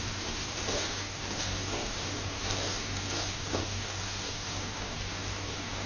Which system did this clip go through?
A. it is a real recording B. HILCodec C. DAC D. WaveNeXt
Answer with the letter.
C